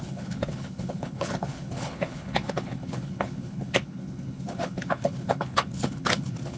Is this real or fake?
fake